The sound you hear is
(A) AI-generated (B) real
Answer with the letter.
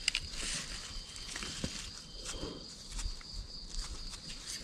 B